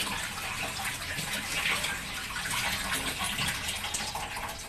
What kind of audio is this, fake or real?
real